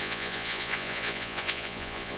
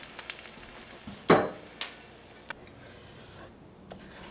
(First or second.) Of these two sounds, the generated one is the first